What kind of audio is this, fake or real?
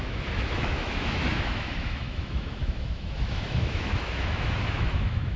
fake